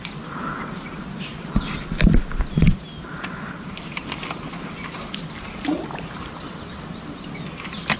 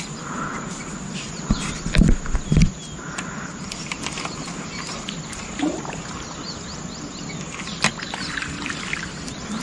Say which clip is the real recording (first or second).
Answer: second